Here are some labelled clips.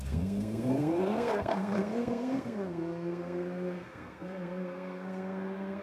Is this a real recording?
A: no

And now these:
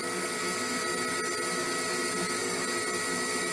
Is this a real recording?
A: yes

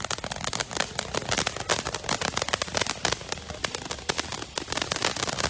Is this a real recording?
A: yes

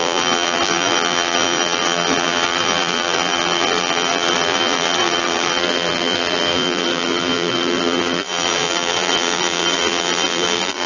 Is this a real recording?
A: no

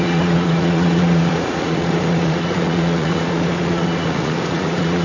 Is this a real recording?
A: no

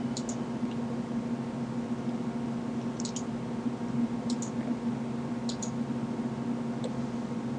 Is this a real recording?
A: yes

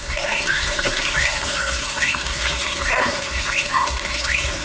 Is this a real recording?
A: no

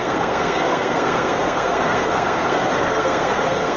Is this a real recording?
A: no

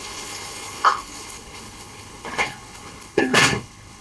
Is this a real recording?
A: no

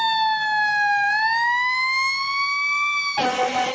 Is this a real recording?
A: yes